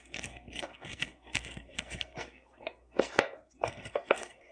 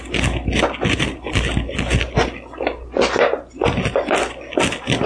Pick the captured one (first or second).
second